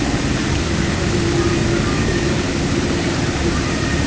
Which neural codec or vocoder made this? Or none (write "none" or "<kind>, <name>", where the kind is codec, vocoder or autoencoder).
none